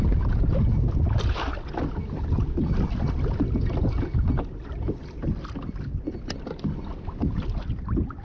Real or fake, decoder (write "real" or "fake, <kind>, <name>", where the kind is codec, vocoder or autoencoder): real